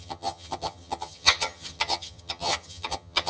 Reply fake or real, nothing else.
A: fake